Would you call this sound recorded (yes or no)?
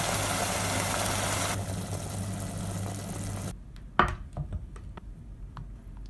yes